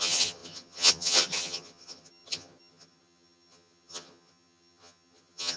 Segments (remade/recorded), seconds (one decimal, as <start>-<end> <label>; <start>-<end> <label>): 0.0-5.6 remade